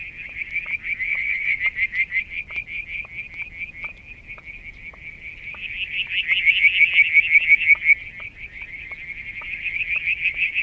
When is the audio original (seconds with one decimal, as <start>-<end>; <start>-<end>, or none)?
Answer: 0.0-1.1; 1.6-10.6